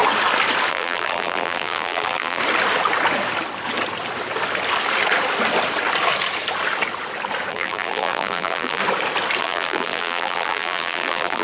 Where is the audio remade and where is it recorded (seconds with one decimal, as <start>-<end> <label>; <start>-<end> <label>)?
0.0-0.7 recorded; 0.7-2.4 remade; 2.4-7.5 recorded; 7.5-8.8 remade; 8.8-9.4 recorded; 9.4-11.4 remade